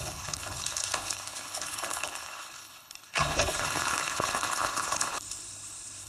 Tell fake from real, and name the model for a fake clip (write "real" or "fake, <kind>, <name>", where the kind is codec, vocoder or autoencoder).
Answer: fake, codec, HILCodec